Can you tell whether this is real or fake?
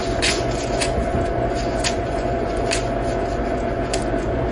fake